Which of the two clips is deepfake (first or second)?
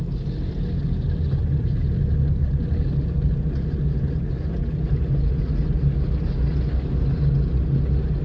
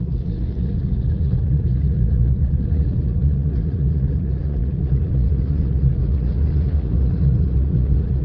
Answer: second